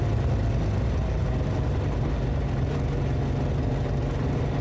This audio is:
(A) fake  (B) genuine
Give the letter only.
B